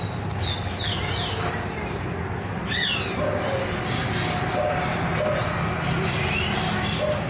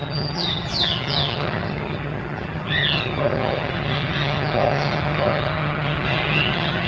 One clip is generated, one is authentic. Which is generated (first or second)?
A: second